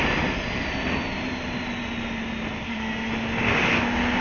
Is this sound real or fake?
real